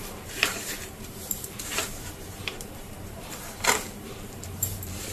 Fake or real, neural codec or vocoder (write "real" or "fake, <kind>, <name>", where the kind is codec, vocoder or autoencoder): fake, vocoder, BigVGAN v2